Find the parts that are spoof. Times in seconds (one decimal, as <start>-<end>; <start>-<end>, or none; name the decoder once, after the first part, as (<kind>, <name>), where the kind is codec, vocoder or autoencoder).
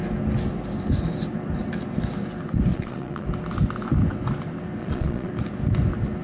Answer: 2.7-3.3 (vocoder, Vocos); 4.8-5.3